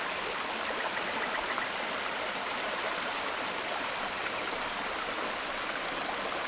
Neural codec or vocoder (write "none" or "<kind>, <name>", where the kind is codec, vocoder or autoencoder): none